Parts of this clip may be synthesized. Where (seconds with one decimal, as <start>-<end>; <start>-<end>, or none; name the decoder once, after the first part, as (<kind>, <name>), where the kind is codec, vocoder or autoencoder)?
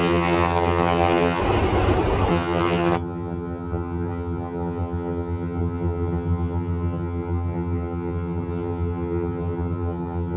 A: 0.0-1.4 (vocoder, HiFi-GAN); 2.3-10.4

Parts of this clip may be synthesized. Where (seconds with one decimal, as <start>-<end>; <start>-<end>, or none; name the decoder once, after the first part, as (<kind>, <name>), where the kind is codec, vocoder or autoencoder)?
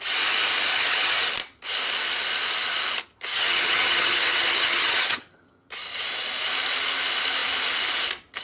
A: 0.7-1.2 (vocoder, HiFi-GAN); 3.3-5.7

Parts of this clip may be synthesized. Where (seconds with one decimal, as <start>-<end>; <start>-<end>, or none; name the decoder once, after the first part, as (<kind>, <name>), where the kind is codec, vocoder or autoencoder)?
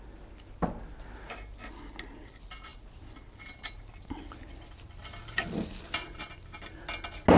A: none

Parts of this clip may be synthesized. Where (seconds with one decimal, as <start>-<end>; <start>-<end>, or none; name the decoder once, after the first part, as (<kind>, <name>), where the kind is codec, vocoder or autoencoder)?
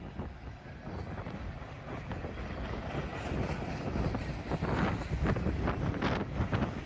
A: none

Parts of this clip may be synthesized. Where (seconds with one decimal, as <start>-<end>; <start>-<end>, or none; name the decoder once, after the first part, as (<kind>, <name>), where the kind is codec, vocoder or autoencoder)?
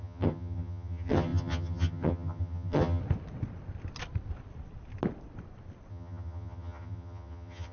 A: 0.0-3.0 (vocoder, HiFi-GAN); 5.9-7.7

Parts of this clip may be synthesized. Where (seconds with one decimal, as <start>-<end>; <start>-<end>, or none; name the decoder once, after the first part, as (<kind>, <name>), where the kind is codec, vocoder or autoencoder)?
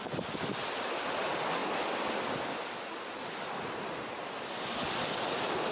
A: none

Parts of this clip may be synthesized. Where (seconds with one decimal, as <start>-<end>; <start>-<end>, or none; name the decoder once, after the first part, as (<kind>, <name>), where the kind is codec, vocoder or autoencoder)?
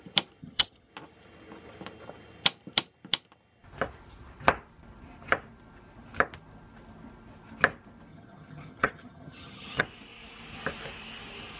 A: 0.4-0.9 (vocoder, HiFi-GAN); 8.1-9.8